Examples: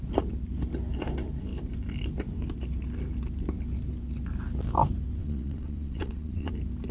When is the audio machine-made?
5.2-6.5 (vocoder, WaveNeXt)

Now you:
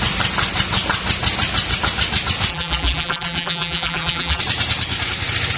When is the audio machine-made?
2.5-4.4 (vocoder, BigVGAN v2)

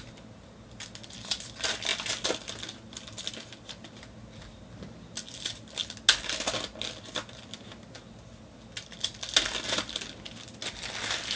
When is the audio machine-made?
none

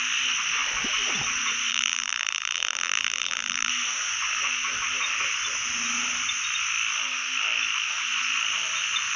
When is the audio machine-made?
1.7-3.7 (vocoder, BigVGAN v2)

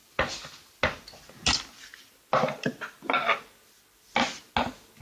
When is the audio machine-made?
none

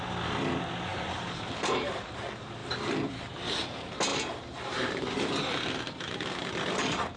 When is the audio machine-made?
0.9-2.2 (vocoder, BigVGAN v2); 2.6-3.3; 4.1-7.2